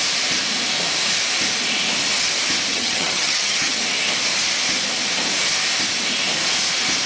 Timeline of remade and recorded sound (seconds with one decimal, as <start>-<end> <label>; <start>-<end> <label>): 0.0-2.7 recorded; 2.7-3.8 remade; 3.8-7.1 recorded